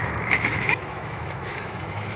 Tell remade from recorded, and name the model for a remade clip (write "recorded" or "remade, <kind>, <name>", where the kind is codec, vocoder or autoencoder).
remade, autoencoder, DAC-VAE